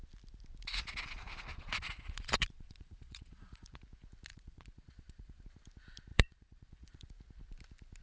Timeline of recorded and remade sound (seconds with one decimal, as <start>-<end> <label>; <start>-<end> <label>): 0.0-1.5 recorded; 1.5-3.8 remade; 3.8-4.3 recorded; 4.3-5.4 remade; 5.4-6.1 recorded; 6.1-7.1 remade; 7.1-8.0 recorded